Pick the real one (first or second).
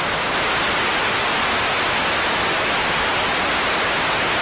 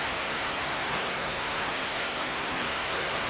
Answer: first